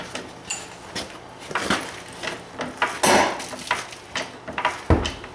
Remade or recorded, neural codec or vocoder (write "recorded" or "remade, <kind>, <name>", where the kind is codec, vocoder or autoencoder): recorded